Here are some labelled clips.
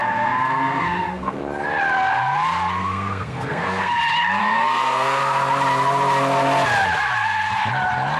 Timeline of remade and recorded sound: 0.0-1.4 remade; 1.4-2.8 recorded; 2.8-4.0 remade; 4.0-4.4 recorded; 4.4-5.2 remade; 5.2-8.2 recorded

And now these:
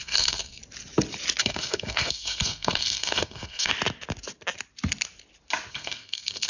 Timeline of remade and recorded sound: 0.0-0.6 remade; 0.6-1.4 recorded; 1.4-3.7 remade; 3.7-5.7 recorded; 5.7-6.5 remade

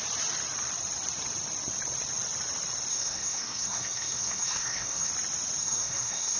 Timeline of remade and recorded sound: 0.0-2.9 recorded; 2.9-5.1 remade; 5.1-5.6 recorded; 5.6-6.4 remade

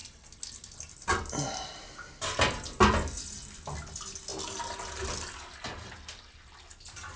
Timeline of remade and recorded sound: 0.0-7.2 recorded

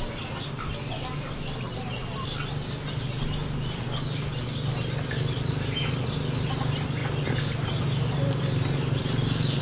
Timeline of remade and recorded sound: 0.0-9.6 recorded

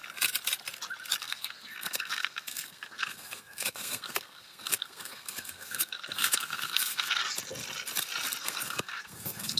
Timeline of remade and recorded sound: 0.0-1.2 recorded; 1.2-7.2 remade; 7.2-8.4 recorded; 8.4-9.6 remade